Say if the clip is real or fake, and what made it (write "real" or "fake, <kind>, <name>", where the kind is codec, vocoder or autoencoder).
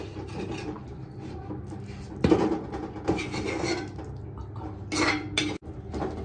real